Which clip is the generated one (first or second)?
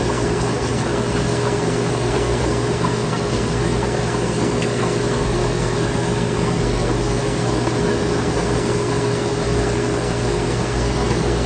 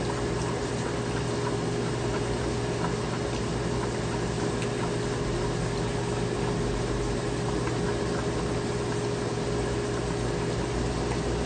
first